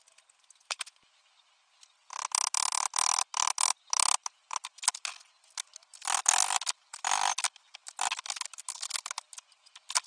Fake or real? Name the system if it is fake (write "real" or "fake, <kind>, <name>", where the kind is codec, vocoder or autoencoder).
real